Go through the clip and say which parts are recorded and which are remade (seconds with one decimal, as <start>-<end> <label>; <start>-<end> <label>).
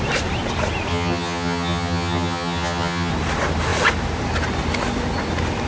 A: 0.0-0.9 recorded; 0.9-3.1 remade; 3.1-5.7 recorded